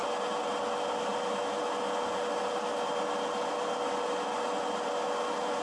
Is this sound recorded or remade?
recorded